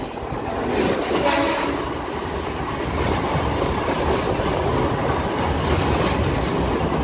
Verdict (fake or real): real